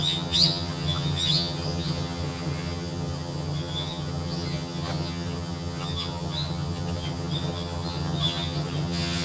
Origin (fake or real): fake